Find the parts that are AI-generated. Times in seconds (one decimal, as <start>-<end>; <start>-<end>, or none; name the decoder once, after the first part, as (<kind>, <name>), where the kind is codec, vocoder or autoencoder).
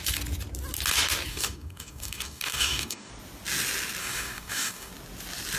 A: 1.3-3.1 (codec, DAC); 4.0-4.9